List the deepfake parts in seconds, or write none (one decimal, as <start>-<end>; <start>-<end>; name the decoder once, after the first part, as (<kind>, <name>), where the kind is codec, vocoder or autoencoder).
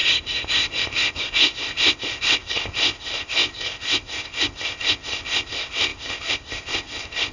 0.0-7.3 (codec, ZipCodec)